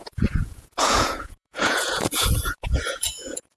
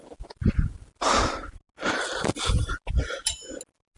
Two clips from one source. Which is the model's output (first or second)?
first